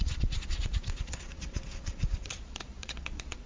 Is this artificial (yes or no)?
yes